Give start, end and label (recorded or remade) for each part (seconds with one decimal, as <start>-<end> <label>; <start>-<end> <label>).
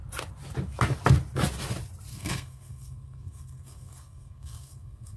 0.0-2.1 recorded; 2.1-5.2 remade